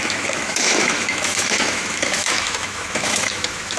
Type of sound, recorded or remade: remade